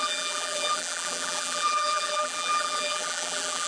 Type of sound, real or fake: fake